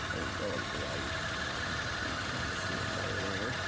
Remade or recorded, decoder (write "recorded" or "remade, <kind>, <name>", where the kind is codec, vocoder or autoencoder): recorded